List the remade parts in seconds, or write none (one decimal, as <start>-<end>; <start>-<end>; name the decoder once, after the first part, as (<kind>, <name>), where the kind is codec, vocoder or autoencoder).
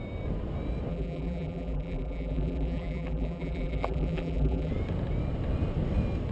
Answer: 0.9-4.7 (vocoder, BigVGAN v2)